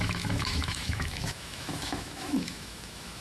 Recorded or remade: remade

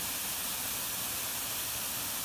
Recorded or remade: recorded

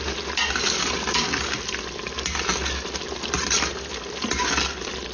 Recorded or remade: recorded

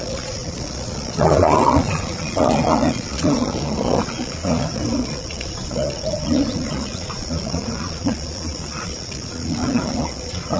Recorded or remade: remade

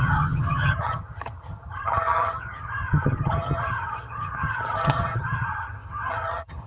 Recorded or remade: remade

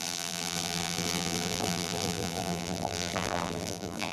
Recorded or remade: remade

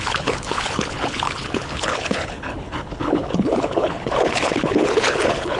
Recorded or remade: remade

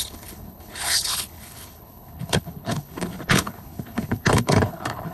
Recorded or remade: remade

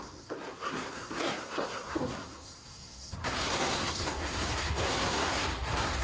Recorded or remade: remade